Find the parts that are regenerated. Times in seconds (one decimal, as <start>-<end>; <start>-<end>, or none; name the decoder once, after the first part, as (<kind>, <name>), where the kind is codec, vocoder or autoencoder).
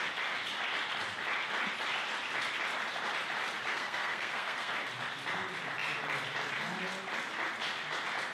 3.7-4.7 (codec, SNAC)